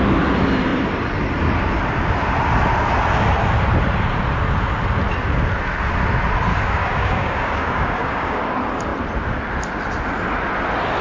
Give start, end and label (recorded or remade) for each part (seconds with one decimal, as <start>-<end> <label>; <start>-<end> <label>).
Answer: 0.0-6.5 recorded; 6.5-8.4 remade; 8.4-11.0 recorded